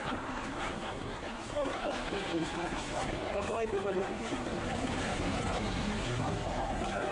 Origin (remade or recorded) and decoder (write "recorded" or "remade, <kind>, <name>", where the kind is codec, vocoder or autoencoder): remade, codec, SNAC